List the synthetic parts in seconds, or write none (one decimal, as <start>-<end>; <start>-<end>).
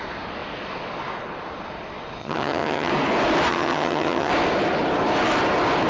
2.2-2.9; 3.5-4.3